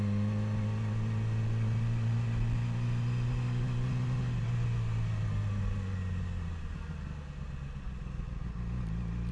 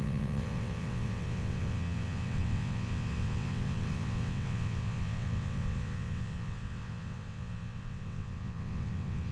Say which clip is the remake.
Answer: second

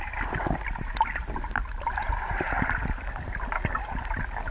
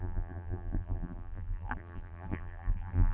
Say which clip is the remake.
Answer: second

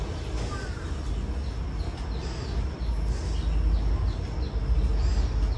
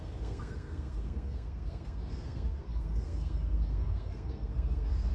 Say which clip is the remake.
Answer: second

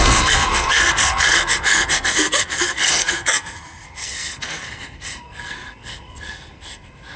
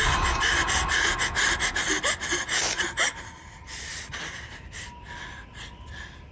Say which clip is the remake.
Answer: first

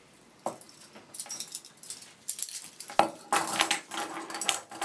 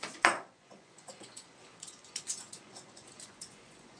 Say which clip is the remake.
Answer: second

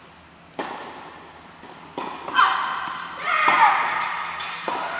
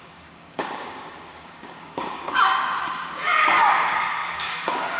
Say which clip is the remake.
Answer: second